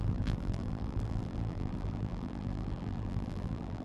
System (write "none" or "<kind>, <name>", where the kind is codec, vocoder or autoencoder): vocoder, BigVGAN v2